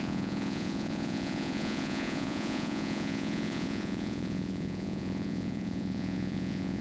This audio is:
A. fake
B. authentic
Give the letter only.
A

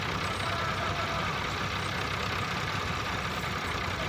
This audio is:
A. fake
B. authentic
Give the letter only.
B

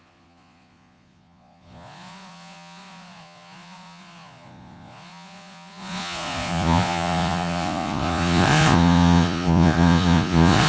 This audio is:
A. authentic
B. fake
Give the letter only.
B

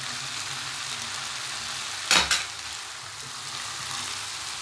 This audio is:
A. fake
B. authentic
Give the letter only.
B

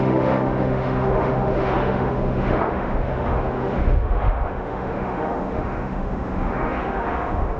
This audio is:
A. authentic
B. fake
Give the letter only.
B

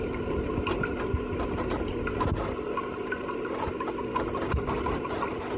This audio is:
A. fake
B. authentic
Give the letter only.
B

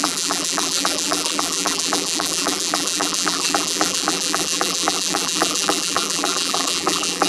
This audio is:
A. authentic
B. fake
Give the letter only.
B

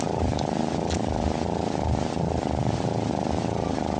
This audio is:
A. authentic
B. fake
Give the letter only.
A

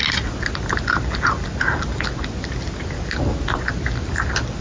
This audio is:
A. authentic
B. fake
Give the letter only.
A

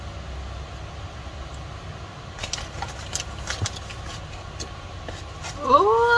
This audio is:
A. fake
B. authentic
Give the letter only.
B